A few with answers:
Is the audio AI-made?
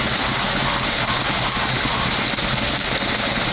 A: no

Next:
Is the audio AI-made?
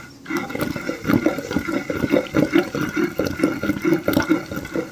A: no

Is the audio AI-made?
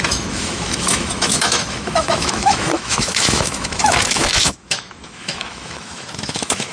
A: yes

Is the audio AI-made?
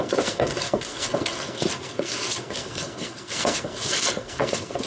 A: yes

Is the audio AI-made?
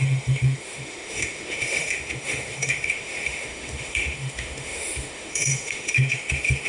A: yes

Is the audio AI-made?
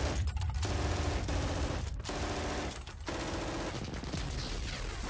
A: no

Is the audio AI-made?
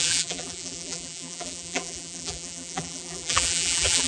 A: yes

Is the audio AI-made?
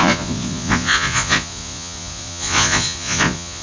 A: yes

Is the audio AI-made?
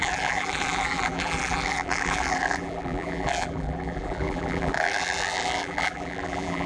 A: yes